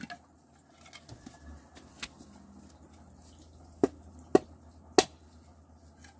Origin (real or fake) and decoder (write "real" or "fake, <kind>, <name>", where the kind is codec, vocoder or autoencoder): real